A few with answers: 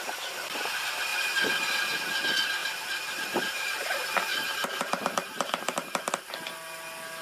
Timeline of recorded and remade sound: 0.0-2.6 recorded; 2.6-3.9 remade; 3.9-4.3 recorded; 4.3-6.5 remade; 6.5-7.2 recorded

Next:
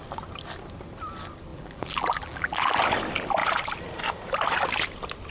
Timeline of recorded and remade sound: 0.0-1.5 recorded; 1.5-2.8 remade; 2.8-5.3 recorded

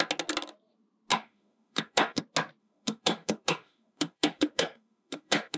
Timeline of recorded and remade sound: 0.0-1.1 recorded; 1.1-2.2 remade; 2.2-2.6 recorded; 2.6-5.6 remade